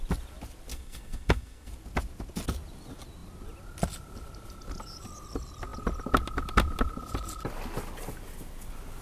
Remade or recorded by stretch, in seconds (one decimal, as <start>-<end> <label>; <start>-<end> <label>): 0.0-0.7 recorded; 0.7-1.7 remade; 1.7-9.0 recorded